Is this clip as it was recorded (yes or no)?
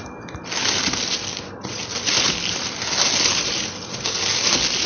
yes